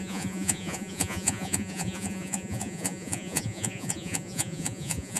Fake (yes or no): yes